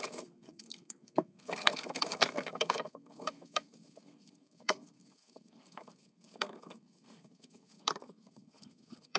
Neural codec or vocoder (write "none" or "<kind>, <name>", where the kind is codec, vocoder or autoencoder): codec, SNAC